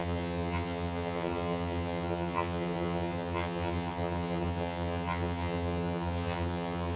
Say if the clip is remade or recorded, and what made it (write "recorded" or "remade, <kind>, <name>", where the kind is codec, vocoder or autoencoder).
remade, vocoder, HiFi-GAN